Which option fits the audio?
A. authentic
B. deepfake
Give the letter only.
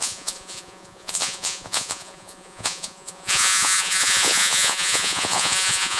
B